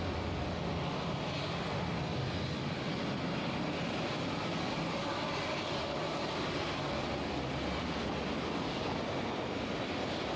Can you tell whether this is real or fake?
real